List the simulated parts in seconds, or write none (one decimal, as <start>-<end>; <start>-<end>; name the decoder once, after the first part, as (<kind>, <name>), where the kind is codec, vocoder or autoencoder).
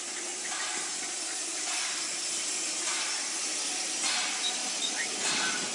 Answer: none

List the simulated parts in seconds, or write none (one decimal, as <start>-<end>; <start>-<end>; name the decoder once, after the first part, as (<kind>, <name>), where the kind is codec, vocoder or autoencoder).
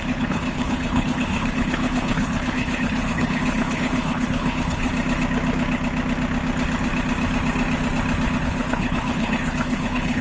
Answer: 0.0-4.9 (codec, HILCodec); 8.4-10.2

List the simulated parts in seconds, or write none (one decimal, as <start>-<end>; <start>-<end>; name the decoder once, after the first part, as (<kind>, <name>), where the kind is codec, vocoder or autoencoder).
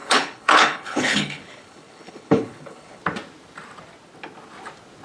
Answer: 0.0-3.0 (codec, HILCodec)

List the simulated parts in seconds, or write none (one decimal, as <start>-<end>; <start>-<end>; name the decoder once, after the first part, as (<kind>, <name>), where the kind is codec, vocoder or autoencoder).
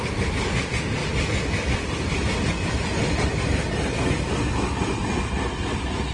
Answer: none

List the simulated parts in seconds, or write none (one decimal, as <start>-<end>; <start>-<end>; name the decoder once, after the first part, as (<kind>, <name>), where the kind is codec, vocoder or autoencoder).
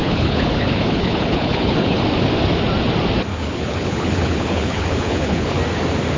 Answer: 0.0-2.0 (codec, HILCodec); 3.3-5.6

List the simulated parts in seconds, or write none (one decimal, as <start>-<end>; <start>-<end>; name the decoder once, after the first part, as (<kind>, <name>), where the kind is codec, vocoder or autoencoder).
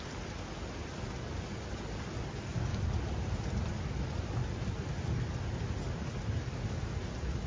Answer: none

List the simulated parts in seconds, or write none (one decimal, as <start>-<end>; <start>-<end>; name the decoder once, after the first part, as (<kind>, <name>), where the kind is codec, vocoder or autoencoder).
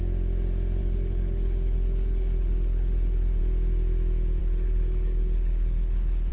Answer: 0.8-3.4 (codec, HILCodec); 4.4-6.3